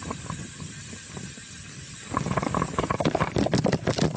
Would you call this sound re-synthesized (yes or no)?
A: no